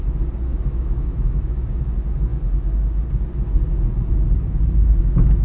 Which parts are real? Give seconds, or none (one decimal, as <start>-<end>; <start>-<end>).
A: 0.0-0.5; 1.8-5.4